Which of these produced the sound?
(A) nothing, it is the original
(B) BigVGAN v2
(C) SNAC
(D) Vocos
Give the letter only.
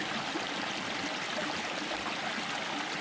B